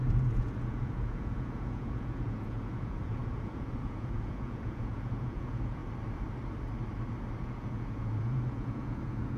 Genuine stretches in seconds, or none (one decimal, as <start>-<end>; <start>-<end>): 5.8-7.4

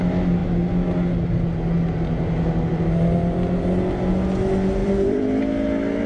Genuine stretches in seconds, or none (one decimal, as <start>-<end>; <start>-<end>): 0.0-4.8; 5.4-6.1

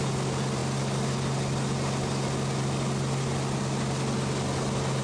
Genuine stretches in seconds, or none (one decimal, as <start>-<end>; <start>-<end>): 0.0-5.0

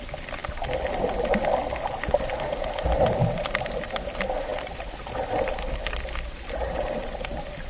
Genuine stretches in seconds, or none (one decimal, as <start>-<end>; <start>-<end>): 0.4-3.4

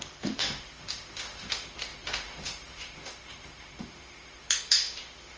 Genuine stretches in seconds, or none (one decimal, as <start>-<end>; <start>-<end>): none

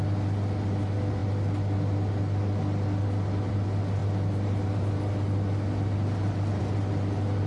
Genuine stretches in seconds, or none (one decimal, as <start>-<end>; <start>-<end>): 0.0-7.5

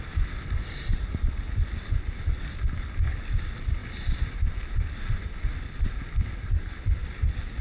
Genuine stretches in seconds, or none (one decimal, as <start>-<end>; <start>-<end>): 0.0-7.6

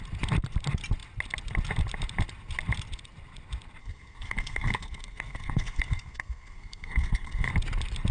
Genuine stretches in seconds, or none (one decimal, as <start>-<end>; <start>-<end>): 0.0-3.8; 7.5-8.1